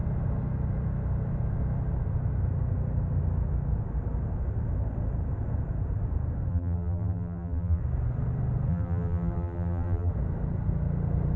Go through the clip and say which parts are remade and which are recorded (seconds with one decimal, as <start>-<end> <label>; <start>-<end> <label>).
0.0-6.5 recorded; 6.5-7.8 remade; 7.8-8.7 recorded; 8.7-10.1 remade; 10.1-11.4 recorded